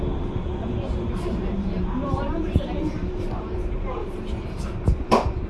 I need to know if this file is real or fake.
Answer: fake